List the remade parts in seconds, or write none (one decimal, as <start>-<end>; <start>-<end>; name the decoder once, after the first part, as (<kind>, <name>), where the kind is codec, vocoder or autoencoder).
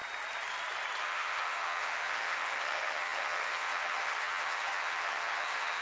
1.0-5.8 (vocoder, HiFi-GAN)